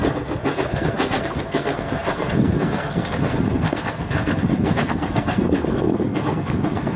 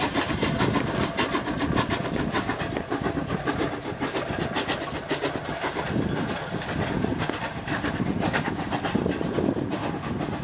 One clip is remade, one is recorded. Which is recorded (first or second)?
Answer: second